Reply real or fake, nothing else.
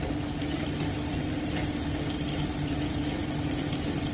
real